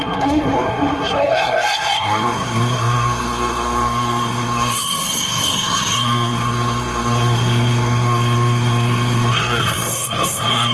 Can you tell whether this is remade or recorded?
remade